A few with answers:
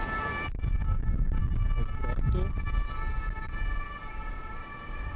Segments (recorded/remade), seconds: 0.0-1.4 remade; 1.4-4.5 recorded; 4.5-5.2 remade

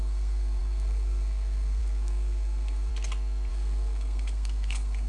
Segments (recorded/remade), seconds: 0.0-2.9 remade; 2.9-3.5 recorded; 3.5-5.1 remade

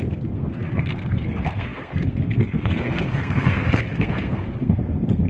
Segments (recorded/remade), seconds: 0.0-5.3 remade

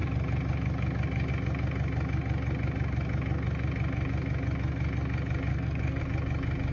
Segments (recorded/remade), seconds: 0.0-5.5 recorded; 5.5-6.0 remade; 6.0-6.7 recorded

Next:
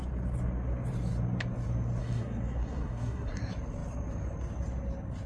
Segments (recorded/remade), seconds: 0.0-2.0 recorded; 2.0-3.4 remade; 3.4-5.3 recorded